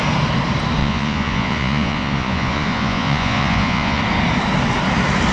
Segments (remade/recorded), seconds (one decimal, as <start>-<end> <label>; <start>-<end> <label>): 0.0-0.8 recorded; 0.8-4.0 remade; 4.0-5.3 recorded